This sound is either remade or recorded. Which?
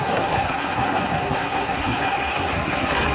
remade